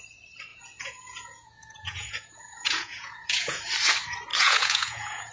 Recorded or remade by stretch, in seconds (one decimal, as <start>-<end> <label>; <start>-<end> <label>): 0.0-0.5 recorded; 0.5-3.6 remade; 3.6-4.3 recorded; 4.3-5.3 remade